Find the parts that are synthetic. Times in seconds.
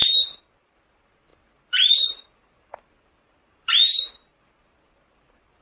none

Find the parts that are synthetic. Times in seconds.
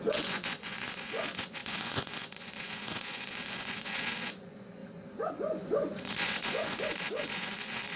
0.0-4.8 (vocoder, Vocos); 5.3-8.0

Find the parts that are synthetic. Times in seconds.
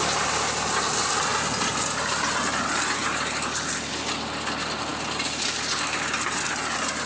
none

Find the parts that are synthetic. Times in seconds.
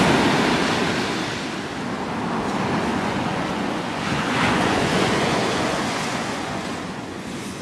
2.9-7.6 (vocoder, Vocos)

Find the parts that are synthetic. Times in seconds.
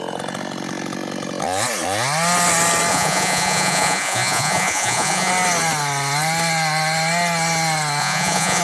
2.9-5.3 (vocoder, Vocos); 8.0-8.6